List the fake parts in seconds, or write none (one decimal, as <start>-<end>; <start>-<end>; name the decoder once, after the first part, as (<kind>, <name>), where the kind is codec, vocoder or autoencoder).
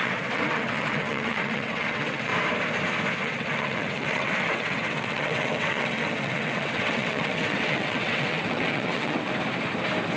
0.0-2.3 (vocoder, WaveNeXt); 3.2-9.3